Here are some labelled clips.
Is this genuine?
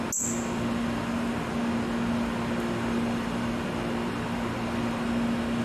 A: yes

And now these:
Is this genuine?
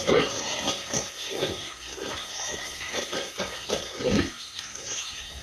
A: no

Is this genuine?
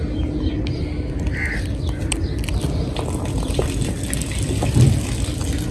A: yes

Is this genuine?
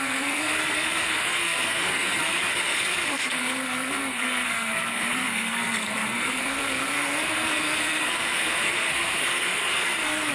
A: no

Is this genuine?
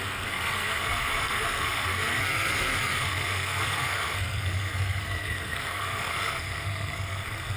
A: no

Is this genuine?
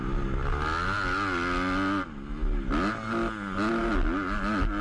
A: yes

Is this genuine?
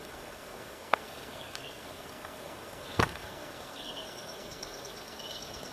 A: no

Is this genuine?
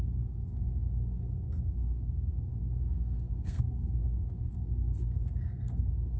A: no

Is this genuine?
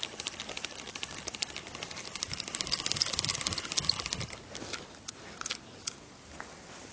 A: yes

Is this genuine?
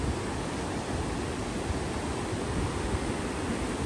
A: yes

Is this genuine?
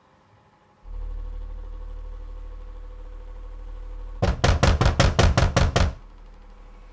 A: yes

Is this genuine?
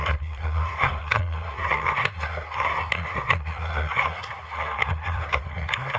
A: no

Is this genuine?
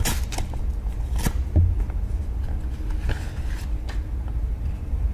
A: yes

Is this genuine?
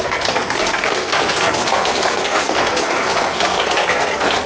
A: no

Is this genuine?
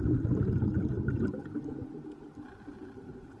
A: yes